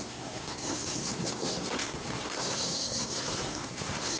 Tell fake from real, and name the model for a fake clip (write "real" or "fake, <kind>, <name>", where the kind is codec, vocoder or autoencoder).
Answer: fake, codec, SNAC